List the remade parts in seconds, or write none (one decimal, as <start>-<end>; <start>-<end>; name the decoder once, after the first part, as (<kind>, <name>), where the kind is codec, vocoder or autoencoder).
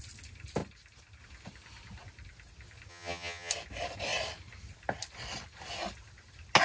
2.9-3.5 (vocoder, HiFi-GAN)